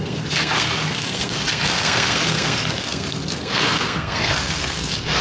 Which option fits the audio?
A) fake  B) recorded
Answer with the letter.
A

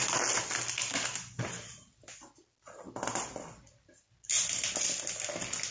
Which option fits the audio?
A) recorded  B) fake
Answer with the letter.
A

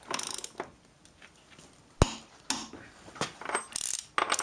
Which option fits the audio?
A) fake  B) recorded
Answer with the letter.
B